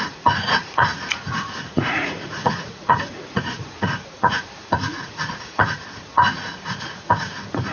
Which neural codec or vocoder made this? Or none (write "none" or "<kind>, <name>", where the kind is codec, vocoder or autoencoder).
vocoder, Vocos